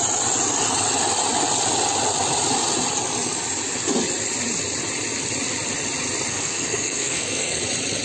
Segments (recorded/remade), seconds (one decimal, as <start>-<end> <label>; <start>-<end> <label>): 0.0-6.3 recorded; 6.3-7.6 remade; 7.6-8.0 recorded